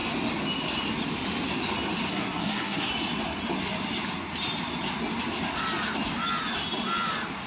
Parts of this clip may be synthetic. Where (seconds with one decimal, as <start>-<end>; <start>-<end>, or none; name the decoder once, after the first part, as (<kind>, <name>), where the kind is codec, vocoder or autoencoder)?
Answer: 2.1-2.9 (codec, SNAC)